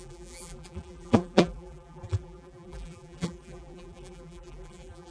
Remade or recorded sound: remade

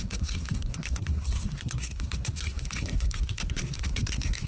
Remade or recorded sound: remade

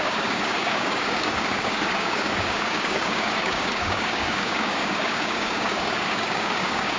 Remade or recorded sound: remade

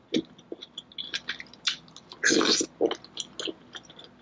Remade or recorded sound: recorded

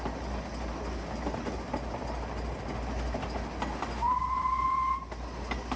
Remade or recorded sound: recorded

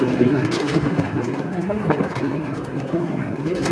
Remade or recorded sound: remade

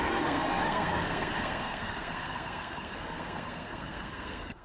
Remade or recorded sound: remade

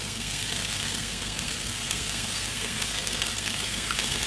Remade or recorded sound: remade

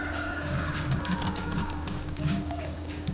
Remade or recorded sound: remade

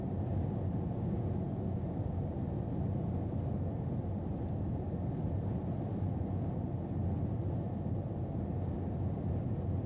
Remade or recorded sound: recorded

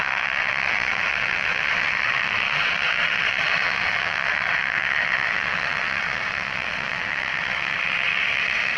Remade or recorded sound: remade